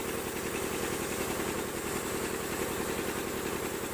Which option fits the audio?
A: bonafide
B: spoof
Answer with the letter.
A